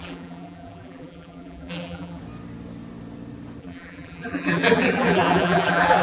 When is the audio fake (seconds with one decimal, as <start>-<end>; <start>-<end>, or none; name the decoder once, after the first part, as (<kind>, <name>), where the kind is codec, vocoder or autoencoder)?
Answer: 0.0-2.2 (vocoder, BigVGAN v2); 3.6-6.0

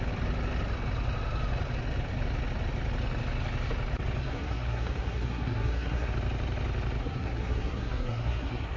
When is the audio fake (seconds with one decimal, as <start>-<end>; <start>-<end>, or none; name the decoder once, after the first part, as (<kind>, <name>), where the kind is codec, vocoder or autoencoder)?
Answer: 4.2-6.1 (codec, SNAC); 7.0-8.8

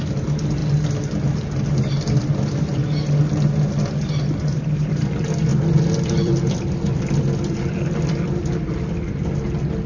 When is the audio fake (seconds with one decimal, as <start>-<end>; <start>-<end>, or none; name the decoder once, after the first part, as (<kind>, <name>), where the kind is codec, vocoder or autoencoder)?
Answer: 5.5-9.0 (vocoder, BigVGAN v2)